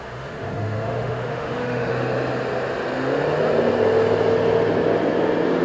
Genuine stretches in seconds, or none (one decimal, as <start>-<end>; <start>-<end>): 1.9-5.6